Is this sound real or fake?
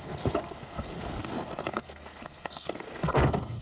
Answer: fake